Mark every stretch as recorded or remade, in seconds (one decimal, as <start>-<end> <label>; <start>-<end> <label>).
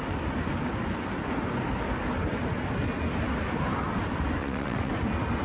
0.0-4.4 recorded; 4.4-4.9 remade; 4.9-5.4 recorded